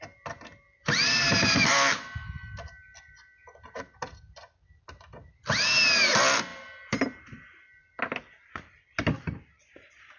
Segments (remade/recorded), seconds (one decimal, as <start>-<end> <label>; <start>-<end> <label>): 0.0-10.2 recorded